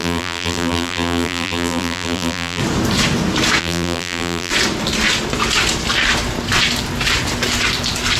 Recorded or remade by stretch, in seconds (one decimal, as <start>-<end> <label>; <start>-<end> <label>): 0.0-2.6 remade; 2.6-3.6 recorded; 3.6-4.5 remade; 4.5-8.2 recorded